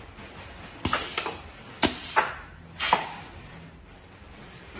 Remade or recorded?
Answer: recorded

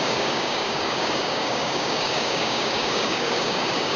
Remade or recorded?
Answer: remade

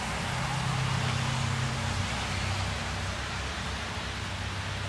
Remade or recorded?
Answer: recorded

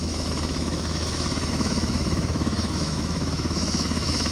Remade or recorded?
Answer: remade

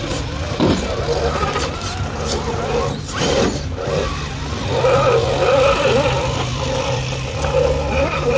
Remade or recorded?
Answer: remade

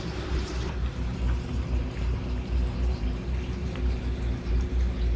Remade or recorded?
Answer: remade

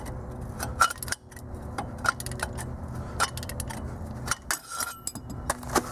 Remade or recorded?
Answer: recorded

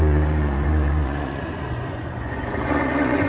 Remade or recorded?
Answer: remade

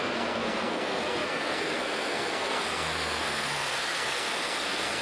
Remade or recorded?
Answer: remade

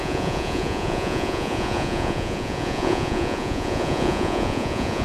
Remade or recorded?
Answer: remade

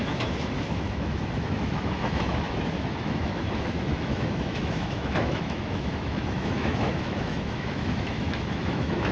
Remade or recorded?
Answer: remade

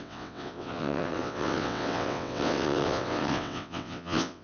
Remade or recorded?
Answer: remade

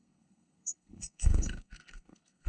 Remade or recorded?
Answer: remade